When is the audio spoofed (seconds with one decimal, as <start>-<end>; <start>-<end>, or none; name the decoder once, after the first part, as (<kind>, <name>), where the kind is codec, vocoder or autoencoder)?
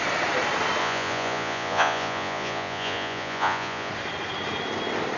0.8-3.9 (vocoder, Vocos)